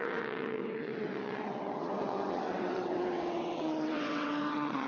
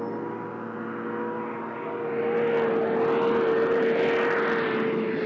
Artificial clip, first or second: first